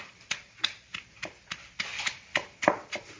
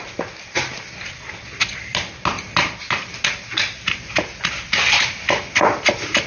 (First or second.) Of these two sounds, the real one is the second